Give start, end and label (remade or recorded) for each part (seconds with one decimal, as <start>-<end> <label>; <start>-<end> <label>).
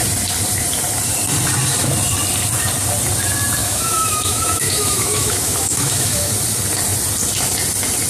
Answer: 0.0-3.6 recorded; 3.6-6.3 remade; 6.3-8.1 recorded